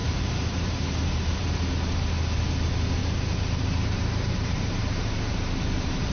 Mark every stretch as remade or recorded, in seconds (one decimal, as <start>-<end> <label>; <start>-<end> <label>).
0.0-1.6 remade; 1.6-3.0 recorded; 3.0-6.1 remade